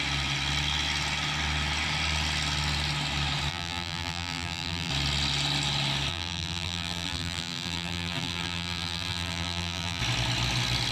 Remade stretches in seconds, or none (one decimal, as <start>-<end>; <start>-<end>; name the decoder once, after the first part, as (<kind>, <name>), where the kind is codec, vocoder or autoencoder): 3.5-4.9 (vocoder, BigVGAN v2); 6.1-10.0